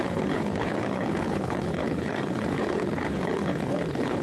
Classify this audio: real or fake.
fake